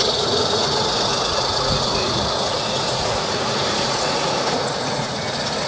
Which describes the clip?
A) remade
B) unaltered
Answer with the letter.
A